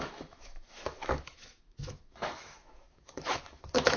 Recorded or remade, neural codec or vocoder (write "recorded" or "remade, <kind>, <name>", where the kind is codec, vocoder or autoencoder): remade, autoencoder, DAC-VAE